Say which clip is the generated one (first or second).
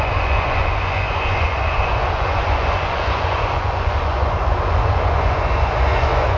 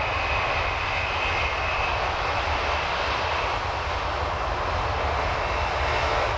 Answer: first